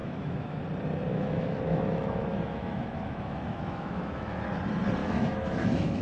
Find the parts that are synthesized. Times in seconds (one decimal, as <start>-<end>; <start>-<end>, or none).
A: 0.0-0.6; 1.1-4.4; 5.0-6.0

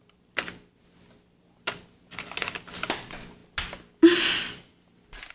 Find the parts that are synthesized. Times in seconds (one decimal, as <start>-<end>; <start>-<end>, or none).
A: none

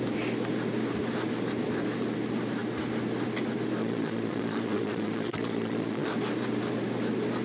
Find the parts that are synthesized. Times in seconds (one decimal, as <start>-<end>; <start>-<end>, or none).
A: 3.8-6.1